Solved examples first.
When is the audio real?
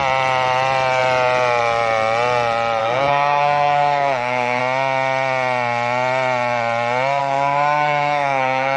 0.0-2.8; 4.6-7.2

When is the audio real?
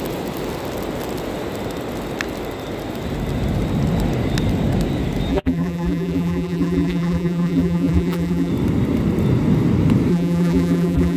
0.0-5.3; 8.5-10.1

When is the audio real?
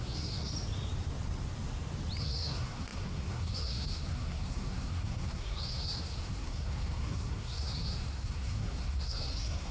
0.5-2.2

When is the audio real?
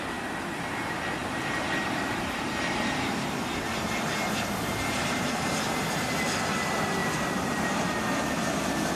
0.0-1.2; 5.4-7.0; 7.5-9.0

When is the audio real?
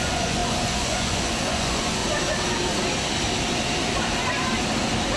2.0-5.2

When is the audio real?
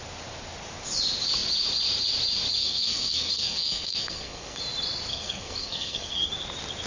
0.0-2.6; 4.6-5.1; 6.3-6.9